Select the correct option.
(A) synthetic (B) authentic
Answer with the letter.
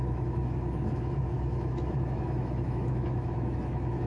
A